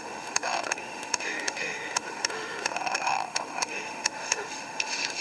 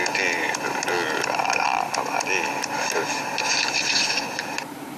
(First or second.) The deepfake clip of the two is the first